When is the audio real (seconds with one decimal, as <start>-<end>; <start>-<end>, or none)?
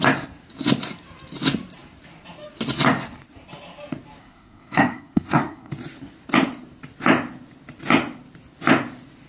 0.0-4.2; 5.7-9.3